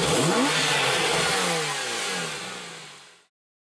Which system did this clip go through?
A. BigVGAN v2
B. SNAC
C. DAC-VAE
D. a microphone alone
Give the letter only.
D